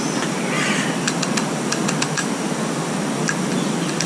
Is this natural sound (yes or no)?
yes